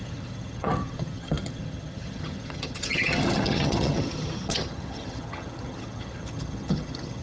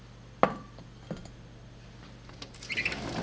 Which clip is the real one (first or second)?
second